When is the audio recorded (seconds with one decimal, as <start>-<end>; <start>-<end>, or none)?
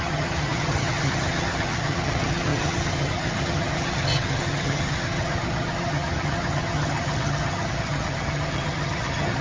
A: none